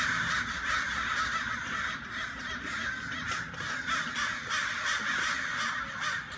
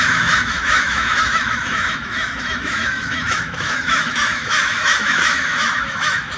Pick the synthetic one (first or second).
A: second